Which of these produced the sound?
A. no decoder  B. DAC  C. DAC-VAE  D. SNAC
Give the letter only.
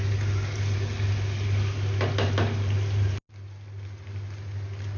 A